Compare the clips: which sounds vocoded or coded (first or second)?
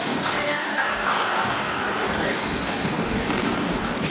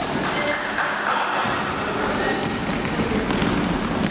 first